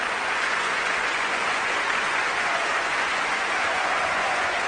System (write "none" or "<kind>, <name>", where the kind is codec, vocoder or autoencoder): vocoder, Vocos